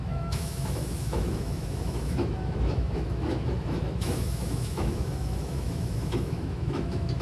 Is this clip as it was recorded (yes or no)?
no